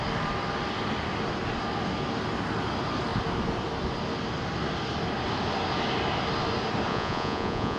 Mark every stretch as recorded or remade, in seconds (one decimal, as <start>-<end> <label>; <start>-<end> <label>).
0.0-6.9 recorded; 6.9-7.8 remade